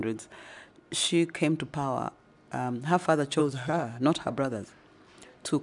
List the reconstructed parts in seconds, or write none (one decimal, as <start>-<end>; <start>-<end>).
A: 3.4-4.0